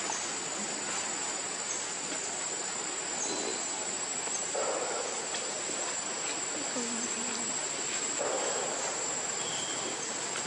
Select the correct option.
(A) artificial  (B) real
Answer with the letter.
B